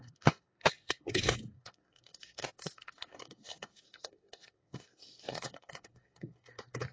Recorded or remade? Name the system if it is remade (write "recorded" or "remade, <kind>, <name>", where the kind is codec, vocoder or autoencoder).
remade, codec, SNAC